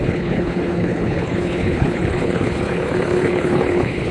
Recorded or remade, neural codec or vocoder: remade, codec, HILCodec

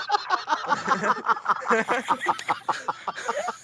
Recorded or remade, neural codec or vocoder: recorded